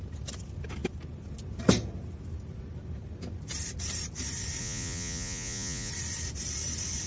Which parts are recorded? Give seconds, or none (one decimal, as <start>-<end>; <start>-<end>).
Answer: 0.0-4.6; 5.9-7.1